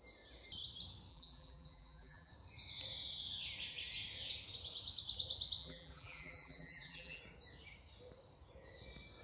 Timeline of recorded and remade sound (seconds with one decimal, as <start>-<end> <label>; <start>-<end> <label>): 0.0-1.1 recorded; 1.1-2.3 remade; 2.3-5.6 recorded; 5.6-7.2 remade; 7.2-9.2 recorded